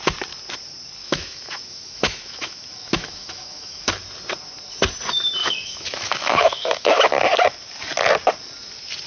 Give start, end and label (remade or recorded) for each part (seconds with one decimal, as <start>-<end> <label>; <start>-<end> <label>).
0.0-1.0 recorded; 1.0-3.9 remade; 3.9-5.4 recorded; 5.4-7.0 remade; 7.0-9.1 recorded